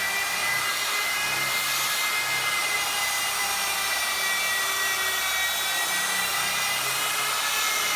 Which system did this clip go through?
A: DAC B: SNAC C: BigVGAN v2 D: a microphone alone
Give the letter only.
D